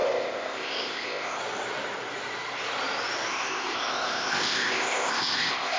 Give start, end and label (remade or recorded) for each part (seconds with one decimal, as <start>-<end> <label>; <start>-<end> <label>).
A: 0.0-1.4 remade; 1.4-3.3 recorded; 3.3-5.8 remade